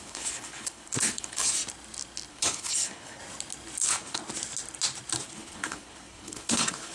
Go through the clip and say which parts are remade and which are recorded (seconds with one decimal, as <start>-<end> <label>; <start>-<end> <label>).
0.0-1.6 remade; 1.6-2.3 recorded; 2.3-3.2 remade; 3.2-3.8 recorded; 3.8-4.2 remade; 4.2-5.2 recorded; 5.2-6.9 remade